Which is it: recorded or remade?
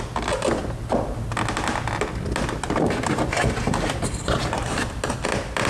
recorded